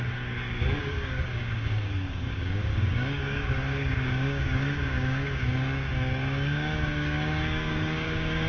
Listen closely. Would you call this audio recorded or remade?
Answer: remade